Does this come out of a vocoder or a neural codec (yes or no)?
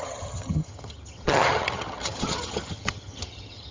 yes